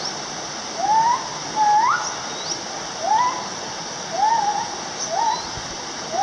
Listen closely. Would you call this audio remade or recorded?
recorded